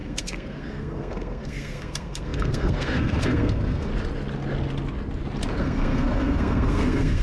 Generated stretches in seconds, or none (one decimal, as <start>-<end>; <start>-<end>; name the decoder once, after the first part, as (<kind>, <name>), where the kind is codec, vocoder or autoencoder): 0.0-3.9 (codec, SNAC); 5.6-7.2